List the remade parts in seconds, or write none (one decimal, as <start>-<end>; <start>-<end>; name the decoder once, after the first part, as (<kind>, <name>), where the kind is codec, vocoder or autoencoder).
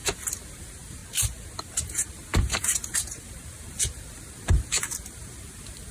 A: 0.6-1.0 (vocoder, BigVGAN v2); 1.7-5.9